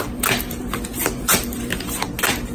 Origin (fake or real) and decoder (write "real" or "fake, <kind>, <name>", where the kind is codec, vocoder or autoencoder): fake, vocoder, BigVGAN v2